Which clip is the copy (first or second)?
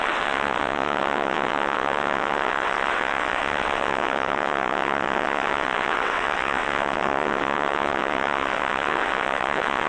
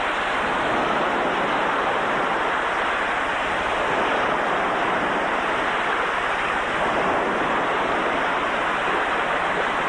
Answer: first